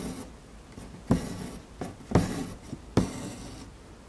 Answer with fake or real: real